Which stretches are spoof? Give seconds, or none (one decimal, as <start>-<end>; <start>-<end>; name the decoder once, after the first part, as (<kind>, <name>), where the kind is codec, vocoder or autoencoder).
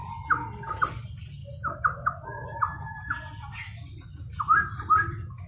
none